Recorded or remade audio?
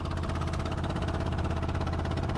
recorded